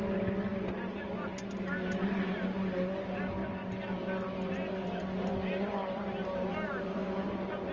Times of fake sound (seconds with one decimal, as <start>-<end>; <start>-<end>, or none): none